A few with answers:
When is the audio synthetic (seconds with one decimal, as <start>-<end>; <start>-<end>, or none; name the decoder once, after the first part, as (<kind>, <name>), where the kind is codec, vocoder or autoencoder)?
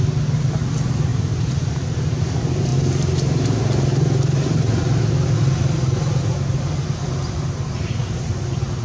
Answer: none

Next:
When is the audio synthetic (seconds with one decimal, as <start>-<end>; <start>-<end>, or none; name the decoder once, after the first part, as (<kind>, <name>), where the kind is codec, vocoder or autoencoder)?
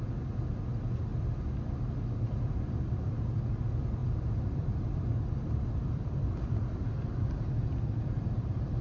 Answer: 1.1-2.3 (vocoder, BigVGAN v2); 4.0-8.8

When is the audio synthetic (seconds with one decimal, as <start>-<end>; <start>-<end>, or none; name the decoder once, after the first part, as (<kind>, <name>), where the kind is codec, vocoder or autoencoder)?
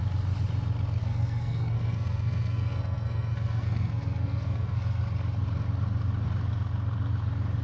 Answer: 1.0-5.0 (codec, SNAC)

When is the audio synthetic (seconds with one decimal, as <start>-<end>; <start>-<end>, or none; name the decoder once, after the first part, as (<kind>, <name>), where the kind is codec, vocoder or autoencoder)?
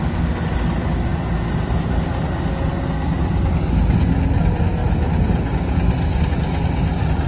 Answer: none